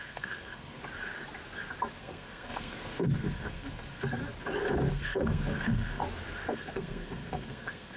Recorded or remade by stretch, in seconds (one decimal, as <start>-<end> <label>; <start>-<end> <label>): 0.0-0.8 remade; 0.8-2.0 recorded; 2.0-4.2 remade; 4.2-4.9 recorded; 4.9-6.0 remade; 6.0-6.5 recorded; 6.5-8.0 remade